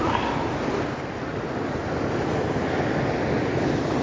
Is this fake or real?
real